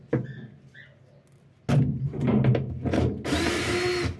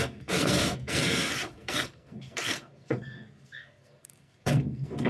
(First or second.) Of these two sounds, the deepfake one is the second